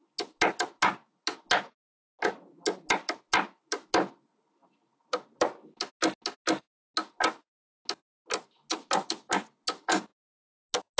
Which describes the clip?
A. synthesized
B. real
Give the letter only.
B